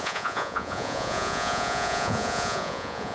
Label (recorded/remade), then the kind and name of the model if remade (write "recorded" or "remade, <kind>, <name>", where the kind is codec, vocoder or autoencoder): remade, vocoder, Vocos